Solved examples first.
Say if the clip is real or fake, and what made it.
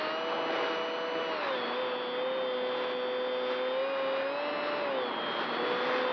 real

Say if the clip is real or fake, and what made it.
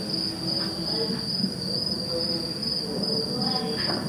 real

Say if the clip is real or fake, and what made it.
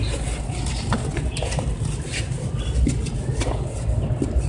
real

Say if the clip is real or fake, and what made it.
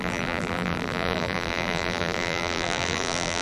fake, vocoder, BigVGAN v2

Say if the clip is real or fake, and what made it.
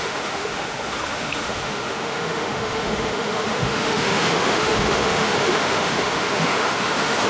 fake, autoencoder, DAC-VAE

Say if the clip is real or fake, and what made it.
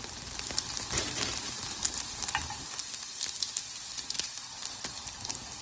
real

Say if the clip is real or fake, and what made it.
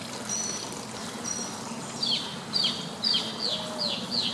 real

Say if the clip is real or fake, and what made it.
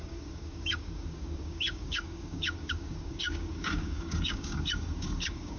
fake, codec, DAC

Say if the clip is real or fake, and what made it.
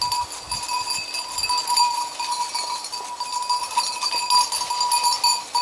real